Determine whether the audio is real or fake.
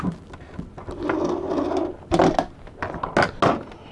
real